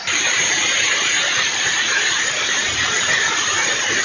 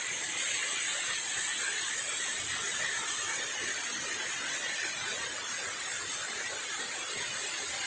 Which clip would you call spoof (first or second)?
first